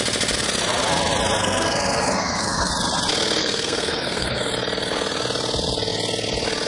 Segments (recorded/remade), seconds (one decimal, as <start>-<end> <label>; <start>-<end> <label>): 0.0-1.4 recorded; 1.4-2.7 remade; 2.7-3.4 recorded; 3.4-4.5 remade; 4.5-6.7 recorded